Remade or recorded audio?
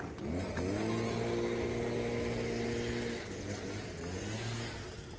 recorded